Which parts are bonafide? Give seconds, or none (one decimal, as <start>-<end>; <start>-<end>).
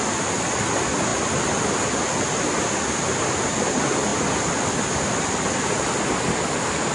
0.0-6.9